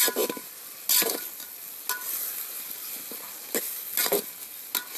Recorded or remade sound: recorded